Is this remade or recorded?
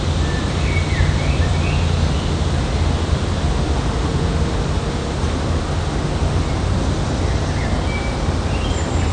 recorded